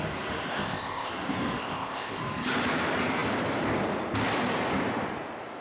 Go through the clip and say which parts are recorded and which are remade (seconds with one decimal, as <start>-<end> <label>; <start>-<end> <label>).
0.0-0.5 recorded; 0.5-1.1 remade; 1.1-1.6 recorded; 1.6-2.2 remade; 2.2-5.6 recorded